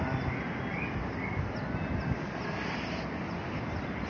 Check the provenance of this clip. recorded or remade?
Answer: recorded